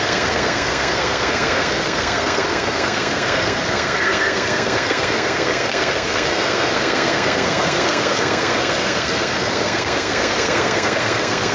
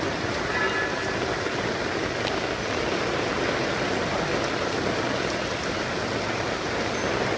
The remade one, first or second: first